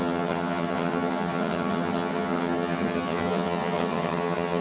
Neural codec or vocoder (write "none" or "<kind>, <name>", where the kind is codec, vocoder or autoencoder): vocoder, HiFi-GAN